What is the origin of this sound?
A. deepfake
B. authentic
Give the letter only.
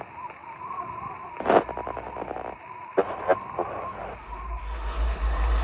B